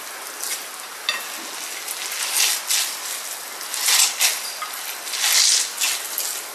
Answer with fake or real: real